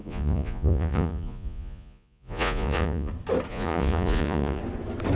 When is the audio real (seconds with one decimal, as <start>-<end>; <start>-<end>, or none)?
3.1-3.5; 4.6-5.2